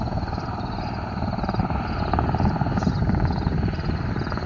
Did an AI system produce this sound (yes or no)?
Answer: no